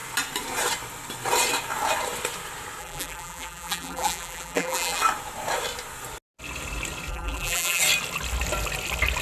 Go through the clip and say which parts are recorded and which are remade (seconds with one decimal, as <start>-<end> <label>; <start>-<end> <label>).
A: 0.0-2.8 recorded; 2.8-5.0 remade; 5.0-7.1 recorded; 7.1-7.8 remade; 7.8-9.2 recorded